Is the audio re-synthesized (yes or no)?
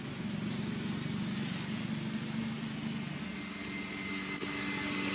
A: no